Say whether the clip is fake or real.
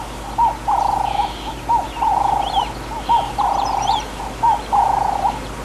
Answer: real